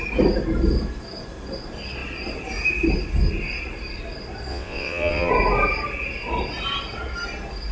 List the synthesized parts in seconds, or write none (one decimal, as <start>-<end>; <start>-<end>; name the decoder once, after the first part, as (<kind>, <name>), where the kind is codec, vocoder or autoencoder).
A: 4.5-5.3 (vocoder, WaveNeXt)